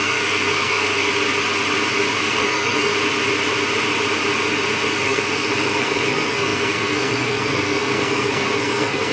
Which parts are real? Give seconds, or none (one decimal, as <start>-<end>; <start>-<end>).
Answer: 1.1-2.2; 2.9-4.9

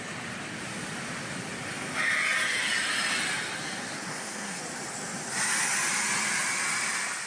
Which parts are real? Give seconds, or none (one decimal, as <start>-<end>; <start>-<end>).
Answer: 0.0-4.1; 4.6-7.3

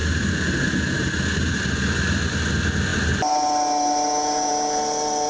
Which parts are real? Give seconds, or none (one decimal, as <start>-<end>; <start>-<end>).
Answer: 0.0-5.3

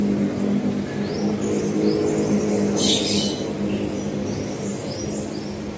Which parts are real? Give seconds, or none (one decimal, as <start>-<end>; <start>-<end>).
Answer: 0.0-2.5; 3.3-5.8

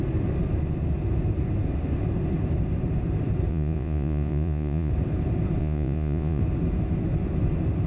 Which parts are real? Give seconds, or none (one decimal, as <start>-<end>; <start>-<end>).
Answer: 0.0-3.5; 4.9-5.6; 6.4-7.9

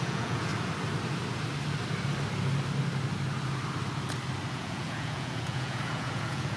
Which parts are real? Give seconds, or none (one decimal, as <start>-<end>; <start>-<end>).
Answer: 0.5-4.5

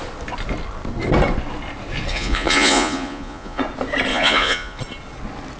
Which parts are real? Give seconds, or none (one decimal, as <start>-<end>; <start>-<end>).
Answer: 0.0-2.1; 3.6-4.1; 4.8-5.6

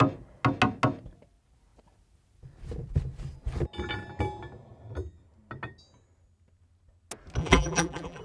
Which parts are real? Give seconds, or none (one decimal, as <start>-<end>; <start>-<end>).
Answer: 0.0-7.4